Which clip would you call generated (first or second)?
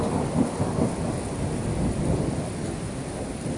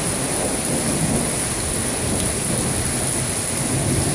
first